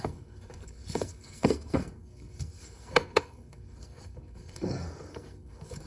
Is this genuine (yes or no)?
no